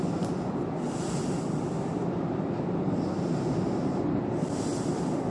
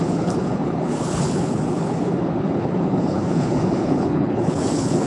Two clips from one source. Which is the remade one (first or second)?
second